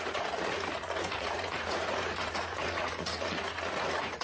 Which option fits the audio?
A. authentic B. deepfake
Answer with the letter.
B